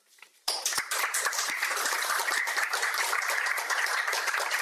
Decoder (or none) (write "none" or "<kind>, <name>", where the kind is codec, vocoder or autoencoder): vocoder, BigVGAN v2